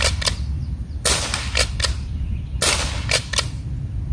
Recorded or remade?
recorded